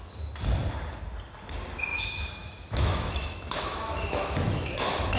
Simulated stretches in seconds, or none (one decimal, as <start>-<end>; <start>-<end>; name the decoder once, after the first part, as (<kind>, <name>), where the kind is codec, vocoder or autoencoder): 1.9-5.2 (autoencoder, DAC-VAE)